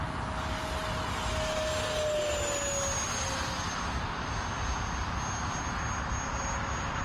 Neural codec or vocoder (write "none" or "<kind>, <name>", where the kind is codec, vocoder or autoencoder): none